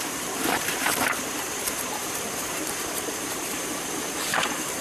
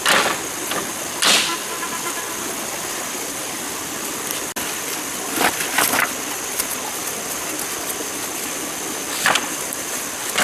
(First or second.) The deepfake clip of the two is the first